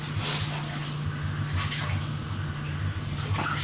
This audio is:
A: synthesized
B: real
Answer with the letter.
B